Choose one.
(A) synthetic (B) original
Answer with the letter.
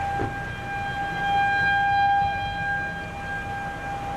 B